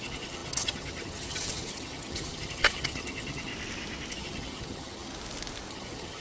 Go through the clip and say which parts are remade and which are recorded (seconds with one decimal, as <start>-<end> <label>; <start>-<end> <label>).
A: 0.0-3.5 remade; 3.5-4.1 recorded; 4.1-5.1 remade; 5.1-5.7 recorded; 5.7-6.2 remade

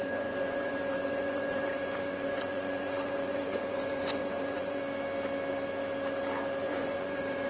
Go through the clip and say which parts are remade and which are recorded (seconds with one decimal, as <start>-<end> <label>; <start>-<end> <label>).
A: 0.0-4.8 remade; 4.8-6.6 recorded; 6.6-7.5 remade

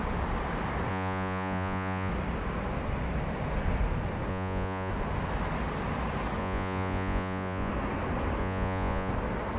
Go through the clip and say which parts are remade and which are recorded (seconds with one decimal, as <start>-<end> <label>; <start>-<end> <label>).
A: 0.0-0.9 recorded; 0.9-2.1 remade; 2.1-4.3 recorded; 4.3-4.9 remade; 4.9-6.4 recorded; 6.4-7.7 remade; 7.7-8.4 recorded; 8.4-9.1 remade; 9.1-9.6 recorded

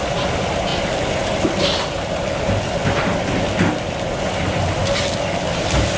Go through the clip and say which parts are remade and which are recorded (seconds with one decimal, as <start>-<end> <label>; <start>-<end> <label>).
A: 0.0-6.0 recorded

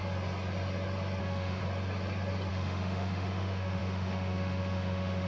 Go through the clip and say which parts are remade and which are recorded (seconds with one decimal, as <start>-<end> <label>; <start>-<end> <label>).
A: 0.0-1.2 recorded; 1.2-1.6 remade; 1.6-2.5 recorded; 2.5-5.3 remade